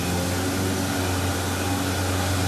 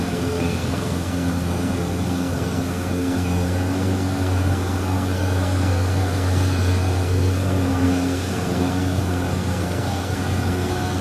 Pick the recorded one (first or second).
first